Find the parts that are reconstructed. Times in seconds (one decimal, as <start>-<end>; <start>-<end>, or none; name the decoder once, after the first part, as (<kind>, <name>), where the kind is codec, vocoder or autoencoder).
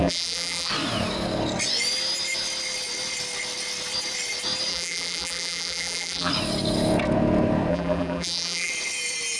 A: 0.0-0.7 (vocoder, BigVGAN v2); 4.7-6.3; 7.7-8.7